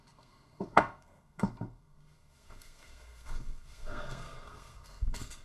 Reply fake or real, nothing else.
fake